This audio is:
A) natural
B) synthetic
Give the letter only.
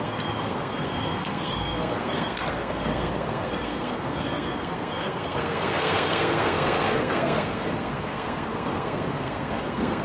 B